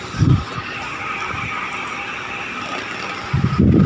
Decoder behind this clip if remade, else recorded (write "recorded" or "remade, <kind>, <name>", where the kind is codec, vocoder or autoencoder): recorded